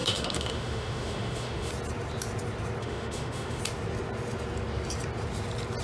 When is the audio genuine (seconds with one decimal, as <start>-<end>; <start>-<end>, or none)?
1.7-2.8; 3.6-5.8